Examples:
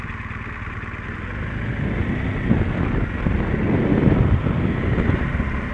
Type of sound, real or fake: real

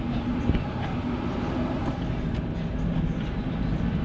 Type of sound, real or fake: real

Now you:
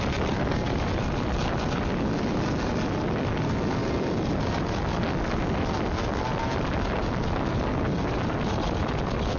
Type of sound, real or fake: real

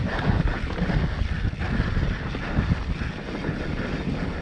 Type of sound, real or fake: real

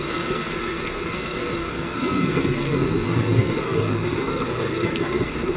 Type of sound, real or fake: fake